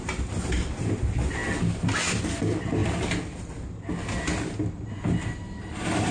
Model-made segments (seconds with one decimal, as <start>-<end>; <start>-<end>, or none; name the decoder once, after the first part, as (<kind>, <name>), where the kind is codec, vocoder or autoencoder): none